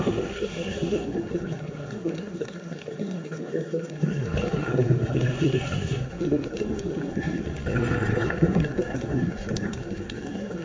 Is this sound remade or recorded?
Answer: remade